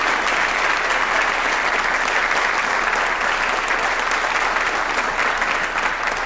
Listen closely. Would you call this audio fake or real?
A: real